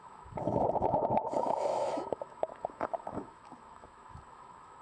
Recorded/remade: remade